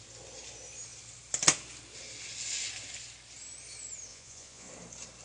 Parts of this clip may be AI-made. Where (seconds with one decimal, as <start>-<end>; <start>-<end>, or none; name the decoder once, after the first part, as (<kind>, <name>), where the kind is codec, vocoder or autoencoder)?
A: 4.1-4.7 (vocoder, Vocos)